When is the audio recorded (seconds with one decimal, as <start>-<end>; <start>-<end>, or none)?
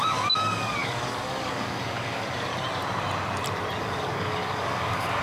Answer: 2.5-3.8